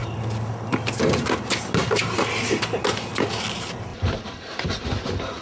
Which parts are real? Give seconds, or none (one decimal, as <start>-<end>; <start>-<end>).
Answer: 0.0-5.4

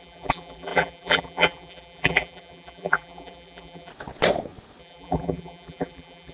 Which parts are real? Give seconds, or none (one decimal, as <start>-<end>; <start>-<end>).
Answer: 3.9-4.8

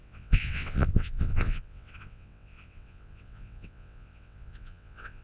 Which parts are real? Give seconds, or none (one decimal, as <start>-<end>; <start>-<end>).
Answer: none

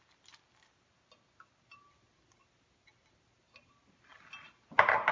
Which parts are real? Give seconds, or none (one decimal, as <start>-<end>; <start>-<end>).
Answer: 0.0-5.1

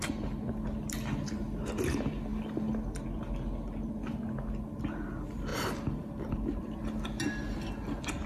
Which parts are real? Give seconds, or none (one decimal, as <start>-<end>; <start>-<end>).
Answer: 0.0-5.5; 6.9-8.3

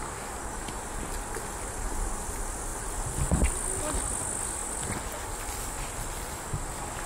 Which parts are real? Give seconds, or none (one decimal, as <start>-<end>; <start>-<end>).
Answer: 0.0-7.1